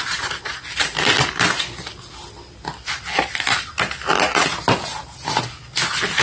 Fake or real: real